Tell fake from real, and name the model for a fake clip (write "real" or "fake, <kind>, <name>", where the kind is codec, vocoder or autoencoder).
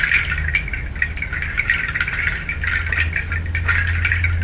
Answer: real